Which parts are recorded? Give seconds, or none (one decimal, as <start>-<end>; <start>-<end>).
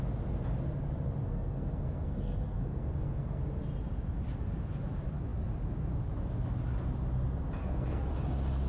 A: 0.0-1.2; 3.4-7.6; 8.1-8.7